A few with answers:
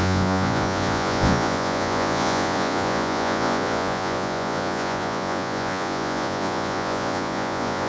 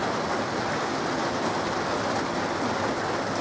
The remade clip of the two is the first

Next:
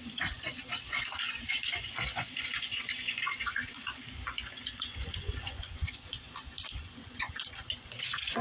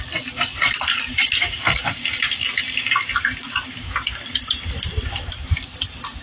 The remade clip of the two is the first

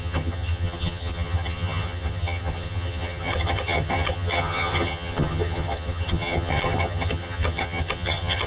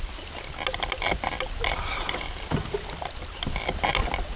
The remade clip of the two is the first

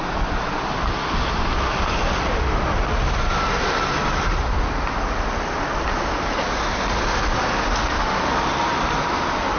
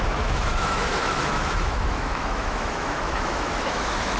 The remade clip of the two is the second